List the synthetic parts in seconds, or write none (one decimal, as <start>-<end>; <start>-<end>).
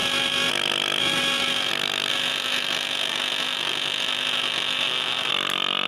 0.0-0.5; 1.0-1.7; 2.1-5.3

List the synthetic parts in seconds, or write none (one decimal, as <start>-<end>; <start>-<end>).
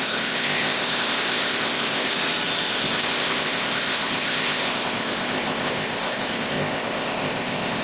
0.0-2.1; 2.7-7.8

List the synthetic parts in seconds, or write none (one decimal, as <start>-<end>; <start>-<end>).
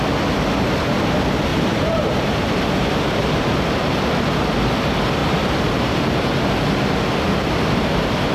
1.5-4.1; 5.2-6.4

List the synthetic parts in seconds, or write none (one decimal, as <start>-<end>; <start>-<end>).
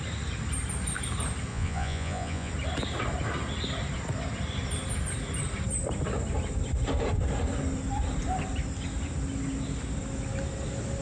1.5-2.5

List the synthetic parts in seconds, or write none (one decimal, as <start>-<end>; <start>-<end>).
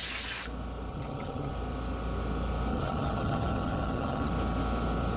0.9-1.5; 2.7-4.3